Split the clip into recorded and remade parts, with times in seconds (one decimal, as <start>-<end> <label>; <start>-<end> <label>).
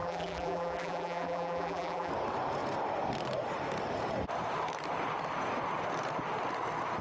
0.0-2.1 remade; 2.1-7.0 recorded